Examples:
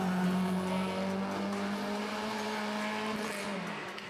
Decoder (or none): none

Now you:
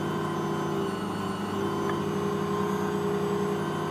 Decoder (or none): none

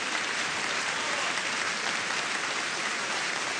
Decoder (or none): vocoder, BigVGAN v2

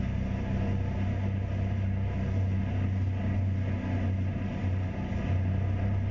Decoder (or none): none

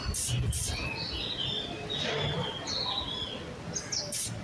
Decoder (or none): none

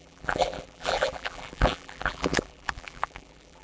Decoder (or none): vocoder, BigVGAN v2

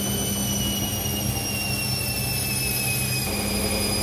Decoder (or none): none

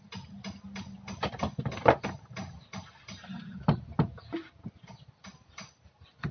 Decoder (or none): none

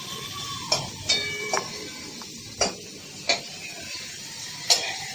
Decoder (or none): vocoder, BigVGAN v2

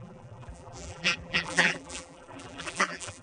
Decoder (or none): vocoder, BigVGAN v2